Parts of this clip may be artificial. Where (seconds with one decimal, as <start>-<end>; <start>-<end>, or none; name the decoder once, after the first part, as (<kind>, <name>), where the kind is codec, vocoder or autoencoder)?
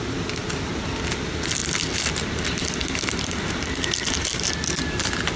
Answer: 0.0-5.4 (vocoder, BigVGAN v2)